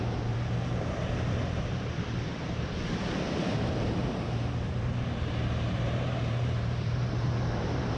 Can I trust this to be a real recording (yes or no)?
no